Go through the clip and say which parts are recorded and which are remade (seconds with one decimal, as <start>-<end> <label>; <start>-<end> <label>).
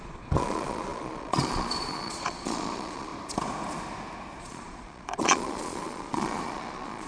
0.0-3.1 remade; 3.1-4.4 recorded; 4.4-7.1 remade